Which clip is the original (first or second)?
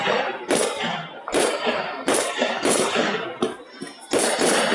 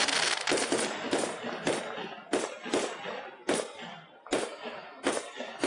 second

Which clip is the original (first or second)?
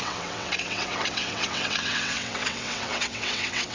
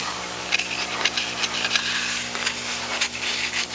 second